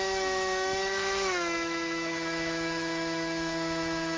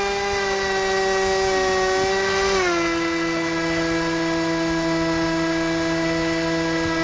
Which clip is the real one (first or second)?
second